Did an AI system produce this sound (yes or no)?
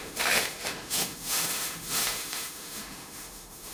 yes